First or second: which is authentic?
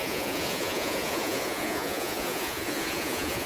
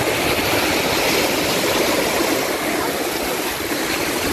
second